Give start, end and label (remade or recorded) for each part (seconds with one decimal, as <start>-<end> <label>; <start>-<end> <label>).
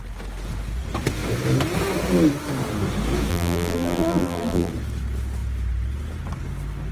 0.0-3.3 recorded; 3.3-4.7 remade; 4.7-6.9 recorded